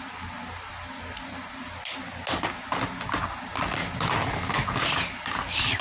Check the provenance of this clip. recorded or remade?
recorded